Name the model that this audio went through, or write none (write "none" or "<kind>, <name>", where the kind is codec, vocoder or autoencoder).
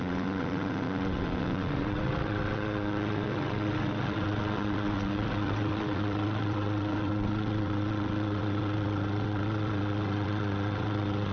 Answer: vocoder, WaveNeXt